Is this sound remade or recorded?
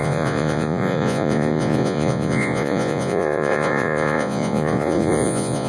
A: remade